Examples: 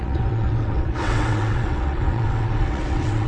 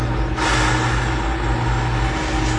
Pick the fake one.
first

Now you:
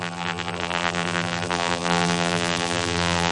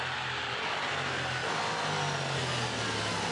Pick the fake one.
first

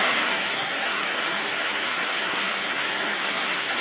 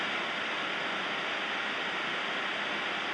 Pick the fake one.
first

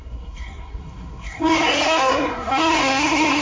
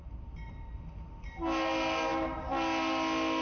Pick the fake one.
first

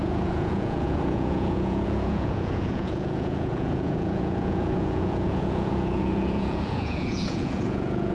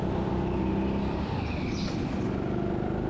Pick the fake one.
first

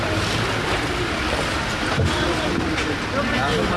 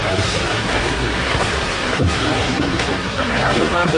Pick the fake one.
second